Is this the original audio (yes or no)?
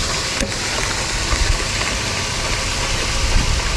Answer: yes